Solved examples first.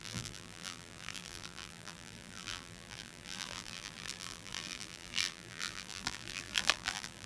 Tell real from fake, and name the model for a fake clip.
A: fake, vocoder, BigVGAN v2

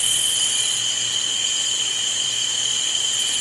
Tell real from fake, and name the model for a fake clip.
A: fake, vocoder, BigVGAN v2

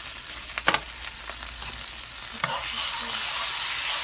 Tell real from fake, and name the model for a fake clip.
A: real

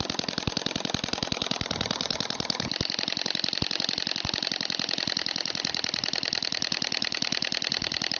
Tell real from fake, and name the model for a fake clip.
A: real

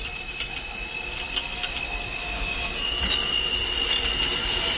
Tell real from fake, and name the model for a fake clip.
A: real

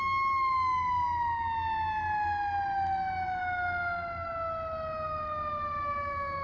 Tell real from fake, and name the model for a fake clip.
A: real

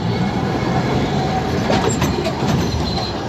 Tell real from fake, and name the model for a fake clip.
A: fake, vocoder, BigVGAN v2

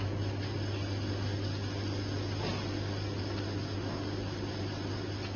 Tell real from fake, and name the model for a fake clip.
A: real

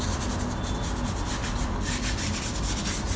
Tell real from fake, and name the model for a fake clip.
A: real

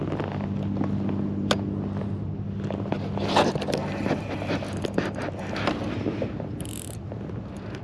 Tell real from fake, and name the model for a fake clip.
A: real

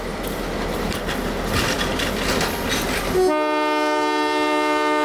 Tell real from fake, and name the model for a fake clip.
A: real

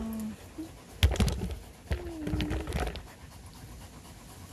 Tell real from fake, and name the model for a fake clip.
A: real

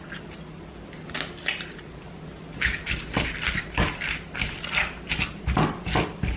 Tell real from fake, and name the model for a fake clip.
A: real